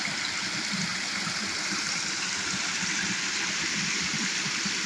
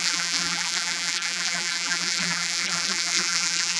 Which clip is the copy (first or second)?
second